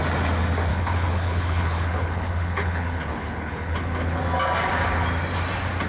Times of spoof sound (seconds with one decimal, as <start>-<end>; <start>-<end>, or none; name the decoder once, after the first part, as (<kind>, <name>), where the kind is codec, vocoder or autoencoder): 0.7-4.2 (codec, HILCodec)